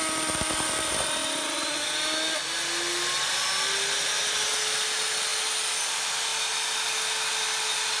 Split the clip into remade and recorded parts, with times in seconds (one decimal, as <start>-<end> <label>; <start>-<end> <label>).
0.0-8.0 recorded